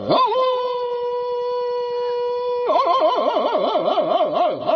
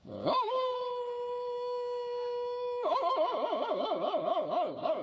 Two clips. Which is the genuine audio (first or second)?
first